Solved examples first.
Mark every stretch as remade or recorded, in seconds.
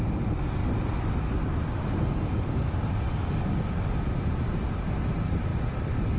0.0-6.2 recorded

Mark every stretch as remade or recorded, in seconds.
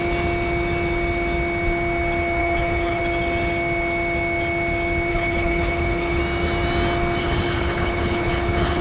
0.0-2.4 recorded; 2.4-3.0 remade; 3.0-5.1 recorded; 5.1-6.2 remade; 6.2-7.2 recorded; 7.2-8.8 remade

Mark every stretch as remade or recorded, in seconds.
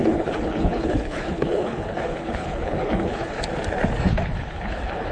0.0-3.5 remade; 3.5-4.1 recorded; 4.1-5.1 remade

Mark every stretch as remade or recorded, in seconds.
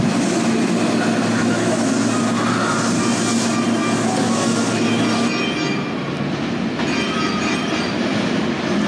0.0-1.4 recorded; 1.4-1.9 remade; 1.9-4.2 recorded; 4.2-4.9 remade; 4.9-8.9 recorded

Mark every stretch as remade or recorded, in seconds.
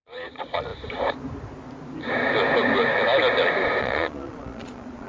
0.0-0.7 remade; 0.7-3.8 recorded; 3.8-5.1 remade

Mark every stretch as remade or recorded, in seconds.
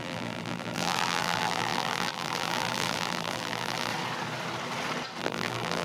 0.0-3.9 remade; 3.9-5.2 recorded; 5.2-5.8 remade